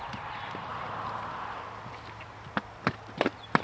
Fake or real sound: real